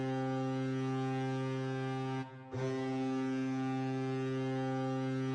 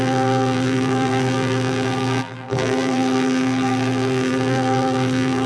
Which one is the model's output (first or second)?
second